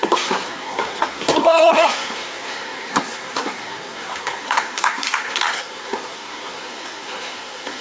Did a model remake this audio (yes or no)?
yes